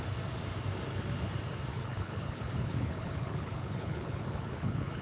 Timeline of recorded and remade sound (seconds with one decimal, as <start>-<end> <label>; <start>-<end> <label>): 0.0-1.7 recorded; 1.7-5.0 remade